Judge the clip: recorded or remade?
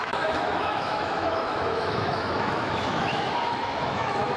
remade